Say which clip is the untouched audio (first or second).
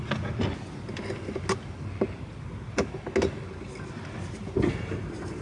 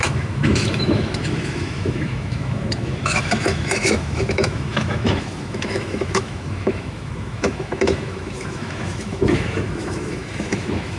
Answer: first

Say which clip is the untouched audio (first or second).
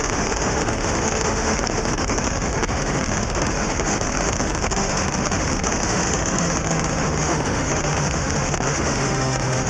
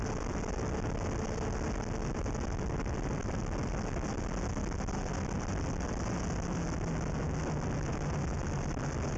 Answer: second